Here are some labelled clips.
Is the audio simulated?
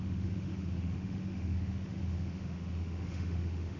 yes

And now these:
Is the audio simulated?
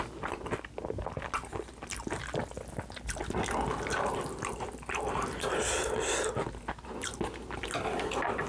no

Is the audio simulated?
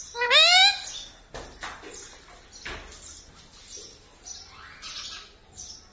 no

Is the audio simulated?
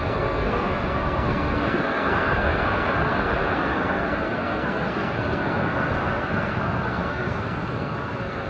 yes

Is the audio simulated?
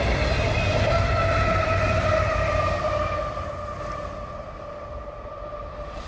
yes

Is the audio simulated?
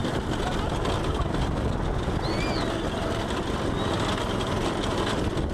no